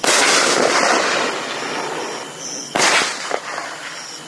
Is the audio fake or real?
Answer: real